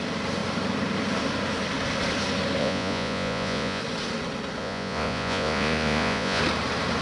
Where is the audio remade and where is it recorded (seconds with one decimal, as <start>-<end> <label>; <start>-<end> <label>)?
0.0-2.6 recorded; 2.6-3.8 remade; 3.8-4.6 recorded; 4.6-6.4 remade; 6.4-7.0 recorded